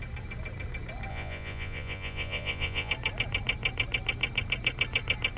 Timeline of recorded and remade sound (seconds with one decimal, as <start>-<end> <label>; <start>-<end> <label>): 0.0-1.1 recorded; 1.1-2.9 remade; 2.9-5.4 recorded